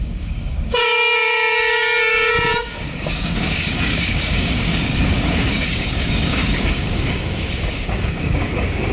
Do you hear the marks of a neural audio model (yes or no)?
yes